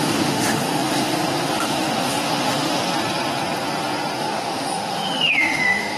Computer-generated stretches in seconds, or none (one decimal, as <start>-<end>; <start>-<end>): 0.0-2.8; 4.2-6.0